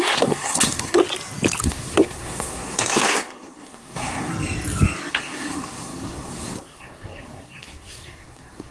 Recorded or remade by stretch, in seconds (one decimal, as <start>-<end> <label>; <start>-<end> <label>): 0.0-1.0 remade; 1.0-1.6 recorded; 1.6-4.3 remade; 4.3-5.1 recorded; 5.1-8.7 remade